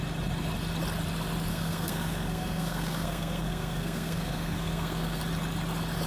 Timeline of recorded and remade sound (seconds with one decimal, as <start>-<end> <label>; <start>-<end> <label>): 0.0-1.5 recorded; 1.5-5.2 remade; 5.2-6.1 recorded